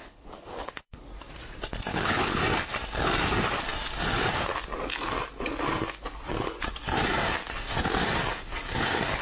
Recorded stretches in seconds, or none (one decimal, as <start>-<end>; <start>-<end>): 1.1-1.9; 2.4-9.2